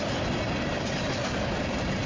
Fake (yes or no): no